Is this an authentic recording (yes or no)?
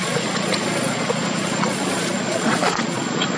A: no